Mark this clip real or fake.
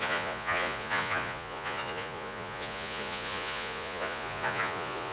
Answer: fake